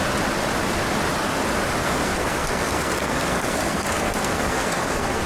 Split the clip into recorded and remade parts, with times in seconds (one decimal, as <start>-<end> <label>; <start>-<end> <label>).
0.0-1.8 recorded; 1.8-5.3 remade